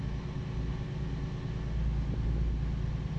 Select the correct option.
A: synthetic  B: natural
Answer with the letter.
B